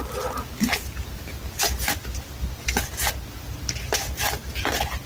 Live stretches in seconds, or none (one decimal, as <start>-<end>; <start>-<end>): 0.0-5.1